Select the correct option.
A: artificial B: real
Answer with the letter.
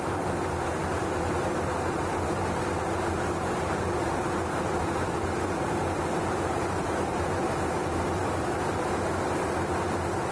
B